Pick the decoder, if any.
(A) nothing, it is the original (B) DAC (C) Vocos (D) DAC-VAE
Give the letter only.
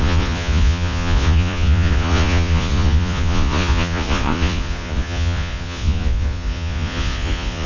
C